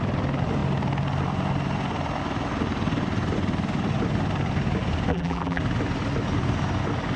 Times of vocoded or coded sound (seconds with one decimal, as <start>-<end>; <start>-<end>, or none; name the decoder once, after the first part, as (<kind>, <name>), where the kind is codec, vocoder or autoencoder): 5.1-5.6 (vocoder, BigVGAN v2)